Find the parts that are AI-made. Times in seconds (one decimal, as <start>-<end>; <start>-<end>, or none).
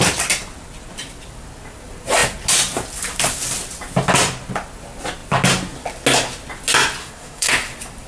7.0-7.5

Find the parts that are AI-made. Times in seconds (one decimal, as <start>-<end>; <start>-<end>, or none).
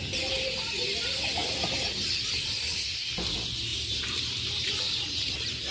3.7-5.3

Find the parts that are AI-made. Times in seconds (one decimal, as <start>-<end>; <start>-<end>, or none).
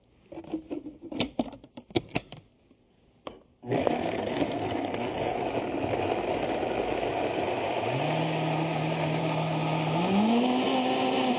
3.8-5.4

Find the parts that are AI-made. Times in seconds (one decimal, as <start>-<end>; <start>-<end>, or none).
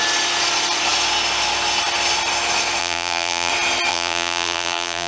2.8-3.5; 3.9-5.1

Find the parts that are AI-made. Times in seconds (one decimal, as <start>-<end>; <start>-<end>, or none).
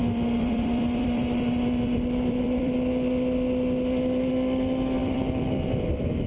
0.0-2.7; 5.0-6.3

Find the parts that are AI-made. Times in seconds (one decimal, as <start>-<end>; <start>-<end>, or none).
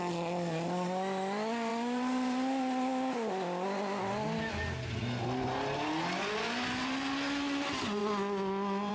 none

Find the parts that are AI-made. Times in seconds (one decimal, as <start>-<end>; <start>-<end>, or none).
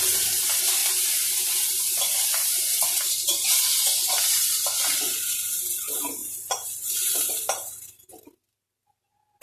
0.8-4.1; 6.2-8.1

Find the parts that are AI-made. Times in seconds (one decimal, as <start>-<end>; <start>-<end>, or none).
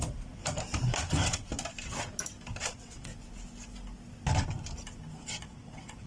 0.0-0.4; 1.1-1.5; 2.7-3.1; 5.4-6.1